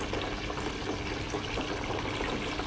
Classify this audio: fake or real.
real